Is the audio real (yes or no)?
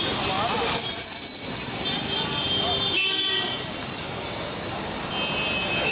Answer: yes